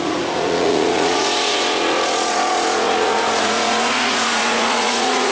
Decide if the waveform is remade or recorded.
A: remade